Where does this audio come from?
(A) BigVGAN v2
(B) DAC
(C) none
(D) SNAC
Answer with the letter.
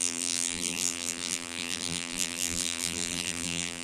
A